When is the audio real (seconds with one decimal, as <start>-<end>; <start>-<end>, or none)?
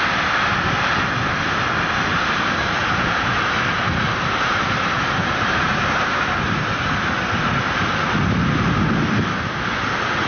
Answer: 0.0-2.1; 6.6-10.3